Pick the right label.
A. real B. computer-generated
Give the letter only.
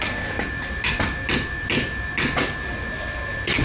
A